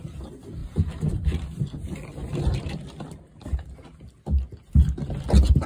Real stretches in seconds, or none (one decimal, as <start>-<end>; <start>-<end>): 0.0-5.7